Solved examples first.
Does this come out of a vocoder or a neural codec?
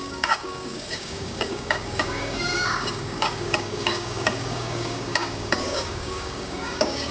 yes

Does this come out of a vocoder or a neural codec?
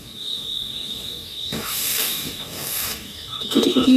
yes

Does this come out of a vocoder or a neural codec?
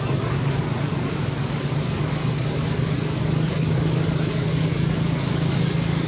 yes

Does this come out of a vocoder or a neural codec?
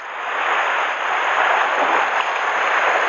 no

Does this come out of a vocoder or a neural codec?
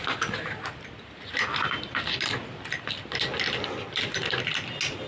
no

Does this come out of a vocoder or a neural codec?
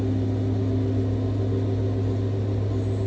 no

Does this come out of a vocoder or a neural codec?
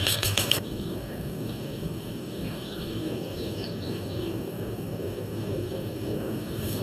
yes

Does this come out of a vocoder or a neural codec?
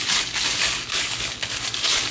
yes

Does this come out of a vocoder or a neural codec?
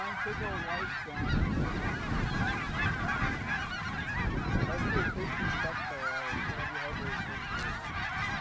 no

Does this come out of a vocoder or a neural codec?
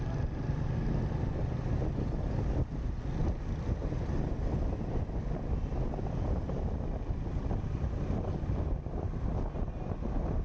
no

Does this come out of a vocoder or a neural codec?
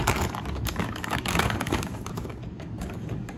yes